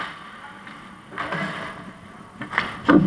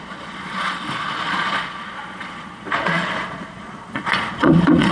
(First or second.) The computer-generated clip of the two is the second